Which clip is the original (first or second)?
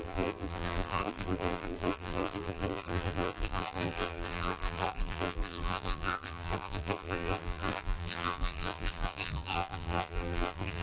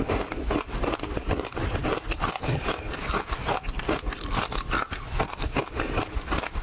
second